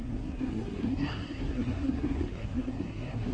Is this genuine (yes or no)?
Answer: no